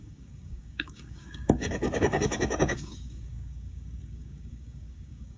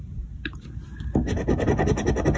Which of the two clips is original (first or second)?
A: second